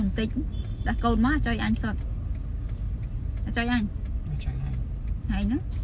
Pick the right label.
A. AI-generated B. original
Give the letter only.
B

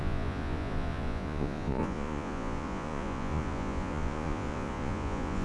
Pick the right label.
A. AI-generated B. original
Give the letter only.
A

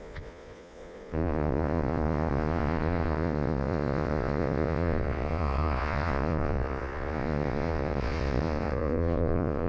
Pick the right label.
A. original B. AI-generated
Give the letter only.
B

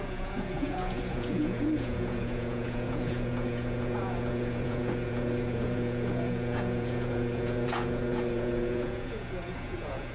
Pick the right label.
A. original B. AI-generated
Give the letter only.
B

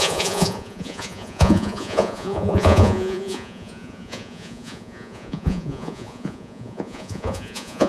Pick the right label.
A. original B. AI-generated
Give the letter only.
B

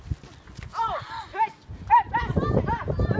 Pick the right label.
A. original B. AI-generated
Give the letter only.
A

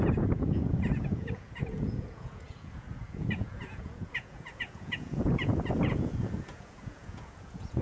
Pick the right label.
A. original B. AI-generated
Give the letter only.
B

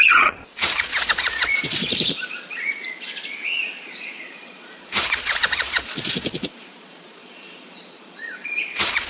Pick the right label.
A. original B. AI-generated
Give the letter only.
B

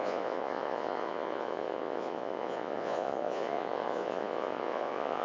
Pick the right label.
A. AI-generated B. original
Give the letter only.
A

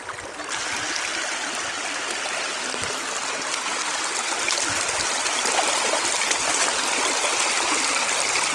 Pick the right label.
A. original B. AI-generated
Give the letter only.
A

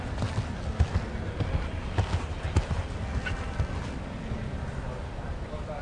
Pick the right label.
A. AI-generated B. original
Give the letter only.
B